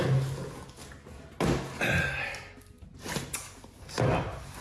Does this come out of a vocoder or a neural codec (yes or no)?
no